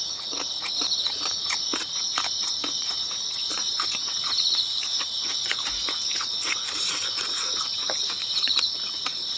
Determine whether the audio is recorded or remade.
remade